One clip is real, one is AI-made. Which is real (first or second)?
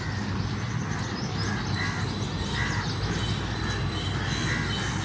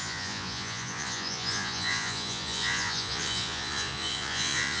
first